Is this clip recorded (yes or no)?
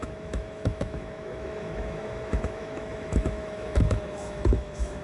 no